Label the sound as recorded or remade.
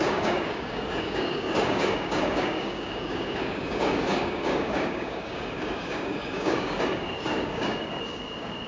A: remade